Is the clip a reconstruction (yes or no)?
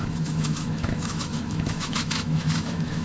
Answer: yes